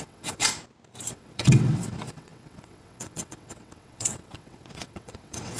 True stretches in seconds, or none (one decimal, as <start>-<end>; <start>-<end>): 0.5-1.1